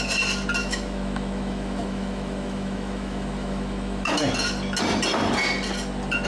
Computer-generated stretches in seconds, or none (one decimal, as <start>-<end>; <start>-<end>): 0.6-4.2